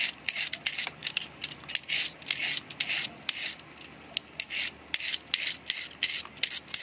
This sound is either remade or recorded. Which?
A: recorded